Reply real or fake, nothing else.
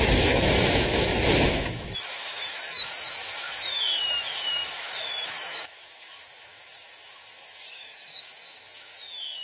fake